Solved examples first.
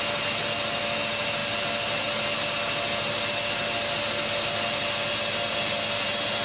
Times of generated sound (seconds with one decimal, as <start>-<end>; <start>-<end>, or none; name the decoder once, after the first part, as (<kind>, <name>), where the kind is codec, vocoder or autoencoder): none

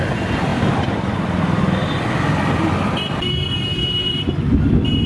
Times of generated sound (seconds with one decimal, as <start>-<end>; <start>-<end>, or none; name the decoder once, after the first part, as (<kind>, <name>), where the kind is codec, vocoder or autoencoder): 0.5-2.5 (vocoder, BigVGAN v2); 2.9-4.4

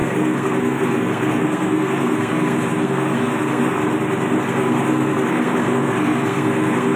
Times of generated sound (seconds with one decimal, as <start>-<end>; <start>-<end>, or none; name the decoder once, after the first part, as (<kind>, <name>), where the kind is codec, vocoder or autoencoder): 0.0-3.8 (codec, SNAC); 4.4-7.0